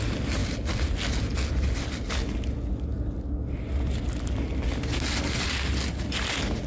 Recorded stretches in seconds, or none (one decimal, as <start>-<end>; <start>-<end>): 0.0-6.7